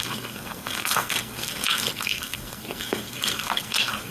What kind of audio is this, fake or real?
fake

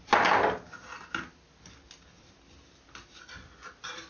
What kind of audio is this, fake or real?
real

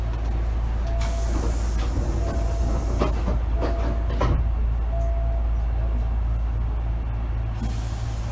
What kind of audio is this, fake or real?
real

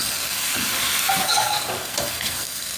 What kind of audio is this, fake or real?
fake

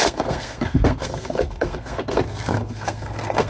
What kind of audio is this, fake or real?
fake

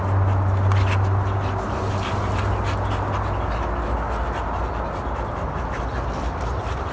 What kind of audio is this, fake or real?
real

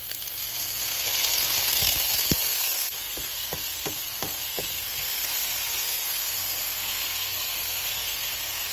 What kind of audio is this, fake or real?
fake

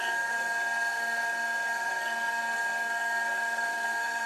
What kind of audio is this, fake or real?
fake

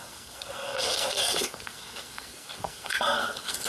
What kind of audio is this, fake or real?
fake